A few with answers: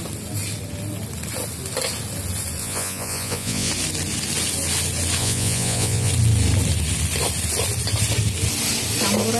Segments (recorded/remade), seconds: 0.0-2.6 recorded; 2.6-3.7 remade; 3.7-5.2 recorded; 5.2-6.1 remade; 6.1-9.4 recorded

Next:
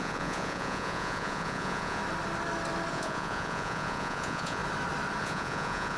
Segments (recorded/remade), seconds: 0.0-2.0 remade; 2.0-2.9 recorded; 2.9-4.6 remade; 4.6-5.2 recorded; 5.2-6.0 remade

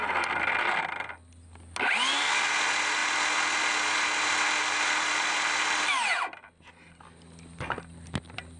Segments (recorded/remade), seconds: 0.0-8.6 recorded

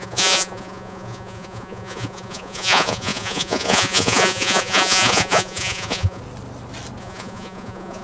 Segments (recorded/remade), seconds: 0.0-6.2 remade; 6.2-7.0 recorded; 7.0-8.0 remade

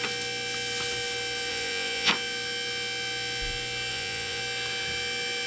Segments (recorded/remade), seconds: 0.0-1.5 recorded; 1.5-2.1 remade; 2.1-3.9 recorded; 3.9-4.4 remade; 4.4-5.5 recorded

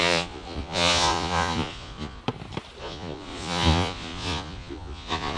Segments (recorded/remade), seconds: 0.0-2.2 remade; 2.2-2.8 recorded; 2.8-5.4 remade